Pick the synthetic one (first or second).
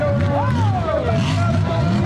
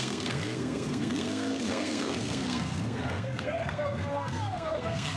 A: second